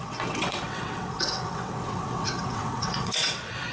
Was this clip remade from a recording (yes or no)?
yes